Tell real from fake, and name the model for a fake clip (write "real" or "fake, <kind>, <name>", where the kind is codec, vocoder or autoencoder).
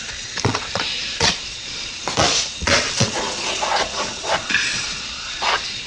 fake, vocoder, Vocos